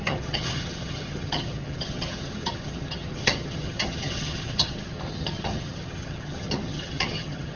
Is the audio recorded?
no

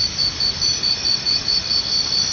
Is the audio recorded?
yes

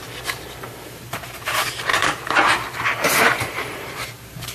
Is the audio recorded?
no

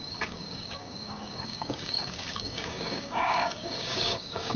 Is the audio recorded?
no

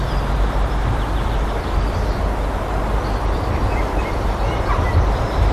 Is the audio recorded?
no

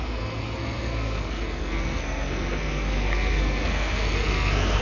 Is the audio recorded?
no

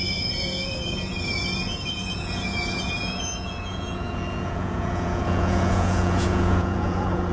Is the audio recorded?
no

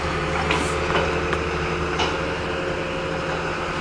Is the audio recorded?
yes